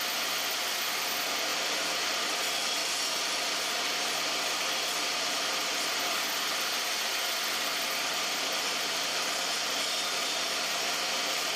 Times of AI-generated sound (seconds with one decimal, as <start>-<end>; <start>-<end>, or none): 0.0-2.8; 4.2-11.6